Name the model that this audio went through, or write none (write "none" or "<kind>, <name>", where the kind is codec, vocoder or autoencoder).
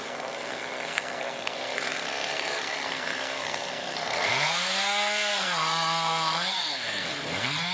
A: codec, SNAC